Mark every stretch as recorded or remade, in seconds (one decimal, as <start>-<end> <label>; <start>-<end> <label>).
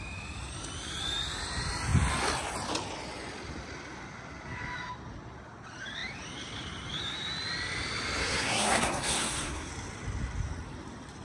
0.0-8.2 recorded; 8.2-9.7 remade; 9.7-11.2 recorded